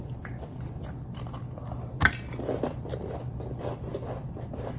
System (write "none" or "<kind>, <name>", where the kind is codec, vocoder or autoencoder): none